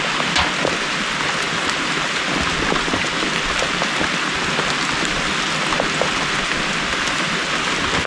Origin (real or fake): real